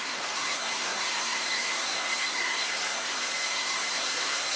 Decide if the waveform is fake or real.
fake